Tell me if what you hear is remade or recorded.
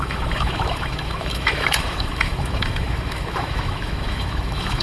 remade